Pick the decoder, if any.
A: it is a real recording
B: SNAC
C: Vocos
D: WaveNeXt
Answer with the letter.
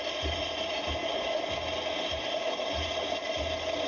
A